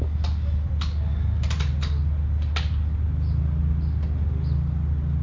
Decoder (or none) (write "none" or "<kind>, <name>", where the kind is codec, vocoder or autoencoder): none